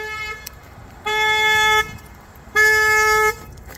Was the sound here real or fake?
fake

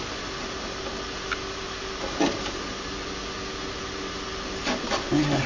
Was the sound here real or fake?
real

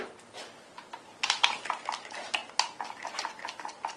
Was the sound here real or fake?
real